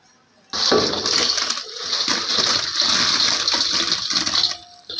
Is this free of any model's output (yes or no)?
yes